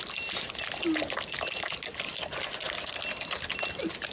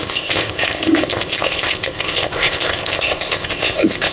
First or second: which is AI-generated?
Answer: second